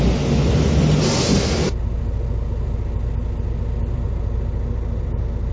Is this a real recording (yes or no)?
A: yes